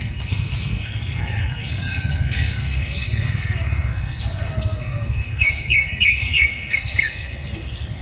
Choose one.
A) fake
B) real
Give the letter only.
A